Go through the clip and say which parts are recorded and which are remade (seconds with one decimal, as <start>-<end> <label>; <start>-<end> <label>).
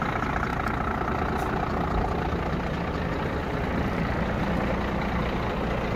0.0-6.0 recorded